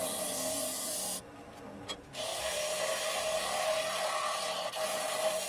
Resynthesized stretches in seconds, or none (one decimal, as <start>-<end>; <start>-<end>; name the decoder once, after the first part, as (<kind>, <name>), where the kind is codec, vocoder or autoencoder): 2.3-5.5 (vocoder, BigVGAN v2)